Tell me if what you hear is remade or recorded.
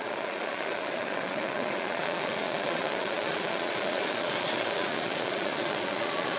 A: remade